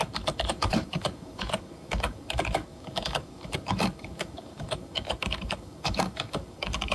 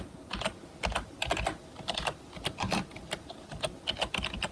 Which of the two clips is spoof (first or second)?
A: first